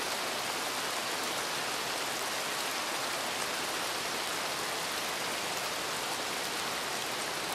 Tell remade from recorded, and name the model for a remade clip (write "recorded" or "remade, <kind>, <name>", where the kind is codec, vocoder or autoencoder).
recorded